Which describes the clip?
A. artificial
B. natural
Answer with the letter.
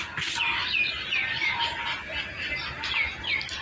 B